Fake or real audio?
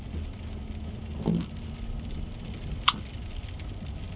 real